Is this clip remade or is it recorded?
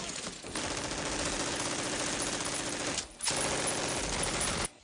recorded